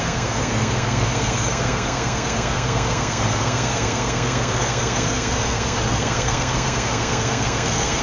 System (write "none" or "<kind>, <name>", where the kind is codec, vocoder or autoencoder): codec, SNAC